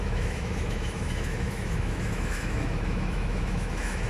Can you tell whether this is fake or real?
fake